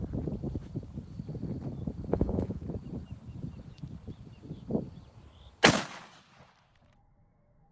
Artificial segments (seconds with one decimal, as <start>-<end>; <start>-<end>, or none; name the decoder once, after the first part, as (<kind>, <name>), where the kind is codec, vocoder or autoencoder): 2.1-2.6 (vocoder, Vocos)